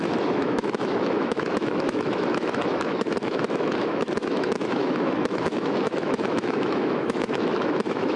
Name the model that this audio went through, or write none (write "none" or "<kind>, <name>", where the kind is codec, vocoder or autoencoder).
autoencoder, DAC-VAE